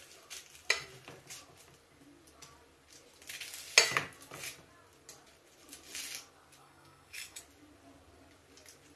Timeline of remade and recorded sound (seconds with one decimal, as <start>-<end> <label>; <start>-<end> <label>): 0.0-6.6 recorded; 6.6-7.4 remade; 7.4-9.0 recorded